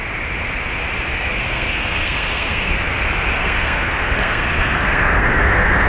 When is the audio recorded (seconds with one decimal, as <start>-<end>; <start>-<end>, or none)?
0.0-1.1; 2.9-3.4